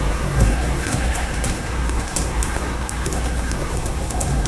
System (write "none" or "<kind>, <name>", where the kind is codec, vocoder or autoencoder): codec, SNAC